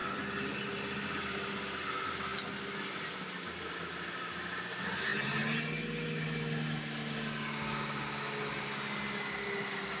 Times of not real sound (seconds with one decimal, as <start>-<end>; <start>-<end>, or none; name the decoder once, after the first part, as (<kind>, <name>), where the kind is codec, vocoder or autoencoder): 0.0-1.5 (vocoder, BigVGAN v2)